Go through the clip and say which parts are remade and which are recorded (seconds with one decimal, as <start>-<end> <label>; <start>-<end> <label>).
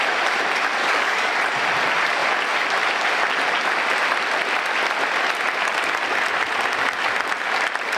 0.0-0.8 recorded; 0.8-1.3 remade; 1.3-8.0 recorded